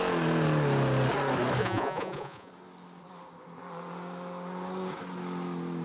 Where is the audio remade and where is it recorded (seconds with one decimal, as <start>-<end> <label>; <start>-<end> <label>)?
0.0-1.6 recorded; 1.6-2.5 remade; 2.5-5.8 recorded